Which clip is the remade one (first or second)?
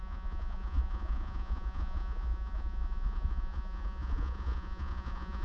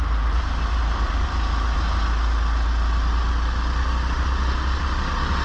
first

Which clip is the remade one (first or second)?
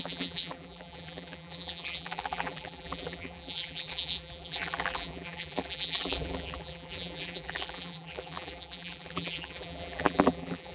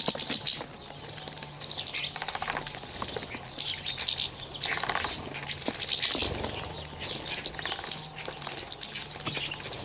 first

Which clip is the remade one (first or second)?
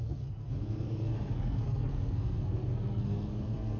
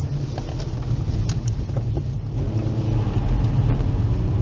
first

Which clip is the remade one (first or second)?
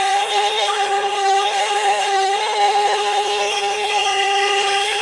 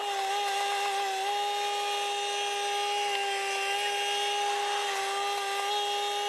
first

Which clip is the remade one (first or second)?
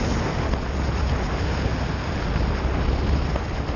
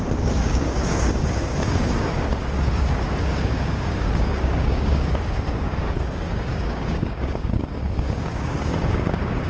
second